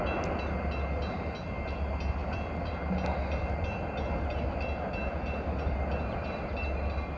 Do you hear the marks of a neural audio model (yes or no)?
no